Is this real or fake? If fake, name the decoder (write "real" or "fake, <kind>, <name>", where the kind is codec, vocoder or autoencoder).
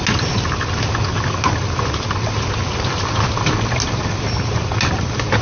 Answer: real